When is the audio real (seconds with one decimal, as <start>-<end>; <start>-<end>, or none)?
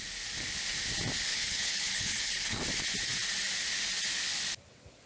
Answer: 0.0-1.3; 2.6-5.1